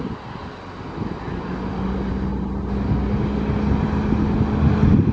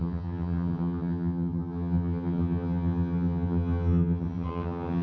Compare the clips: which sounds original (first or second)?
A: first